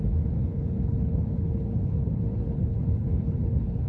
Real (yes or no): no